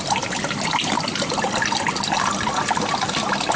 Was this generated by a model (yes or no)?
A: no